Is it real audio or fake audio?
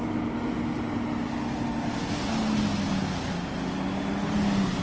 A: real